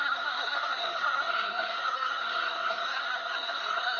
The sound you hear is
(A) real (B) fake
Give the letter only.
B